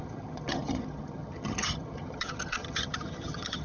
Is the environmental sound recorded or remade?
remade